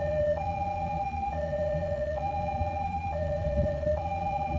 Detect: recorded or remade remade